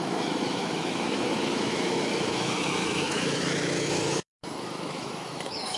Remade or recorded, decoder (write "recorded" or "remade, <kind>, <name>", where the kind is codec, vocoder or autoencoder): remade, autoencoder, DAC-VAE